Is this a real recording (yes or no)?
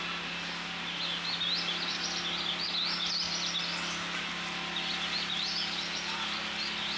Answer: yes